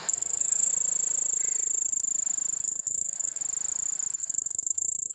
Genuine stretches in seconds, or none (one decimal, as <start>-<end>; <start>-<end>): 0.7-2.6; 3.4-4.2